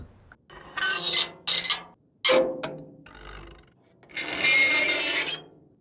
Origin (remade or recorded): recorded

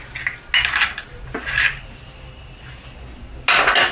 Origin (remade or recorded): recorded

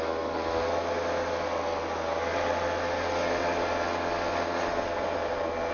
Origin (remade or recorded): recorded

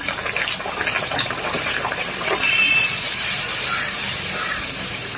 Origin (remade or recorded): remade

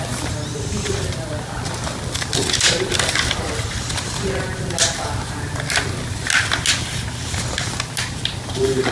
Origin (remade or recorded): recorded